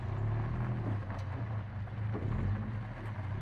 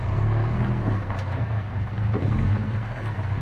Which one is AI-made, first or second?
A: second